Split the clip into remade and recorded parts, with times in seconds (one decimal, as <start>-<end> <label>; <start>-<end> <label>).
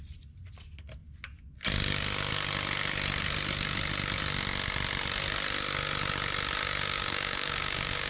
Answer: 0.0-6.6 recorded; 6.6-8.1 remade